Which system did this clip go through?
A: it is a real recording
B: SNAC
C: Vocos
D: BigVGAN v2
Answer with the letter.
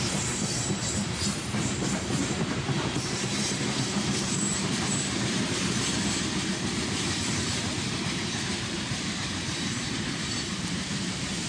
D